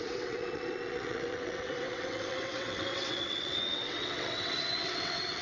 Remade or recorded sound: remade